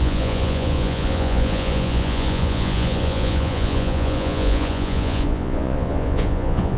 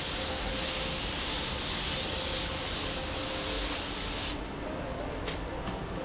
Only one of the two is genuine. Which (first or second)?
second